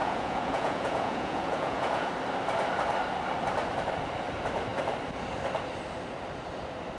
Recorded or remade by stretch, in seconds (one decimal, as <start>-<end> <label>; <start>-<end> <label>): 0.0-2.1 remade; 2.1-7.0 recorded